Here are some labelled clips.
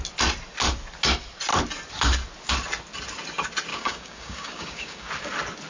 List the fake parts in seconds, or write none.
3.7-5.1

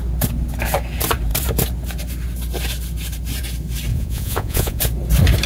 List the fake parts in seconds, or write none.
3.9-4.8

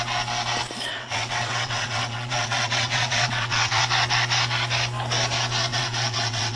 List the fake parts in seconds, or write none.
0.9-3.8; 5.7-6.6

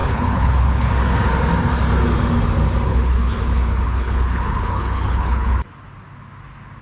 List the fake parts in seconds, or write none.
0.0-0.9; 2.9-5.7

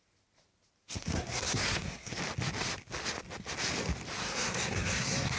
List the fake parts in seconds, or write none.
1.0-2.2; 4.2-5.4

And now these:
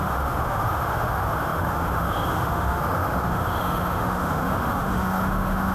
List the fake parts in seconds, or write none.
0.0-5.7

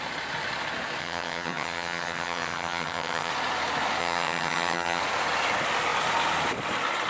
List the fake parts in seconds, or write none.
1.0-3.3; 4.0-5.0